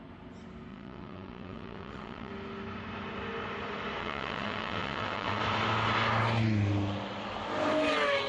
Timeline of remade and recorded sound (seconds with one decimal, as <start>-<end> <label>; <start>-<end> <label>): 0.0-0.7 recorded; 0.7-2.3 remade; 2.3-4.0 recorded; 4.0-5.4 remade; 5.4-8.3 recorded